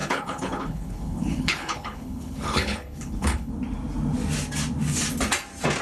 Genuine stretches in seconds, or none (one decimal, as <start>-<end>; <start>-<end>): 3.5-5.8